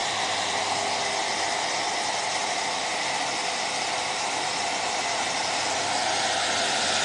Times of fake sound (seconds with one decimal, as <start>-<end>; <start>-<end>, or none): 0.0-1.0; 2.4-4.5